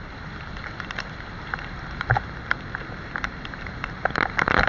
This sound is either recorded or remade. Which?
remade